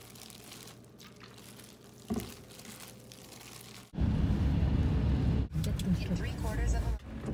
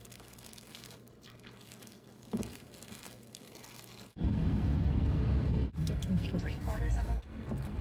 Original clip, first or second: first